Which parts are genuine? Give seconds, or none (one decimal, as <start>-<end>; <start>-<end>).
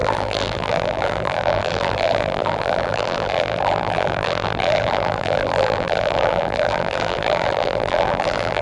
none